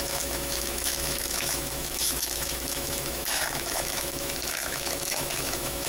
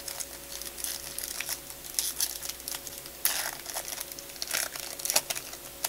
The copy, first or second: first